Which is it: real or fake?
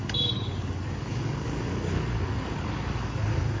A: fake